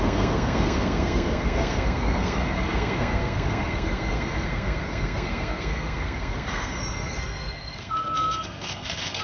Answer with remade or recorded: remade